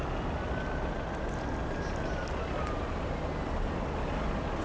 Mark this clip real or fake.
real